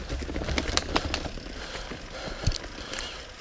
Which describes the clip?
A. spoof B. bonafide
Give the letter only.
B